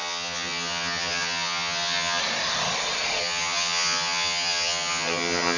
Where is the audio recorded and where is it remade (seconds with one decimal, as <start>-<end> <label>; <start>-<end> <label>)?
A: 0.0-2.2 remade; 2.2-3.2 recorded; 3.2-5.6 remade